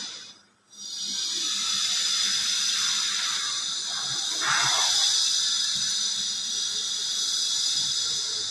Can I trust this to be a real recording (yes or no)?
yes